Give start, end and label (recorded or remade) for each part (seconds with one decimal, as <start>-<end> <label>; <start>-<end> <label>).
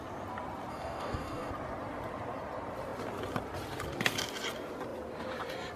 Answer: 0.0-0.7 recorded; 0.7-1.5 remade; 1.5-5.8 recorded